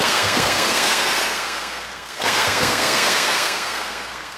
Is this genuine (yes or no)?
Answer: no